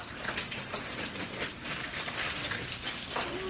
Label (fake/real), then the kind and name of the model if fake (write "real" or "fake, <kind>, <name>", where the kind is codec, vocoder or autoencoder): real